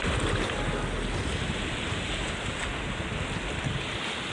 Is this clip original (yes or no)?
yes